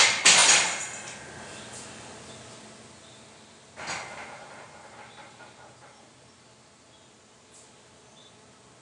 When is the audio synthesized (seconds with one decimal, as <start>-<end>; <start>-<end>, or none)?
none